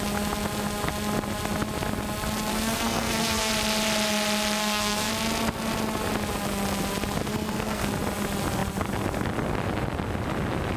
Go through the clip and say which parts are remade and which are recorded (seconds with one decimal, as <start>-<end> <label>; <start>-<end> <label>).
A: 0.0-2.5 recorded; 2.5-3.5 remade; 3.5-4.6 recorded; 4.6-5.1 remade; 5.1-7.3 recorded; 7.3-7.9 remade; 7.9-10.8 recorded